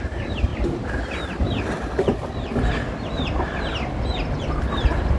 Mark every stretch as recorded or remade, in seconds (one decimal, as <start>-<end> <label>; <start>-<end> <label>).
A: 0.0-5.2 recorded